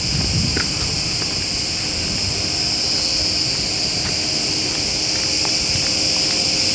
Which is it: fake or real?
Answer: real